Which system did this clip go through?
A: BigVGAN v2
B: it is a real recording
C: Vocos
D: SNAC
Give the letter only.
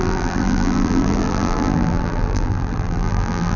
A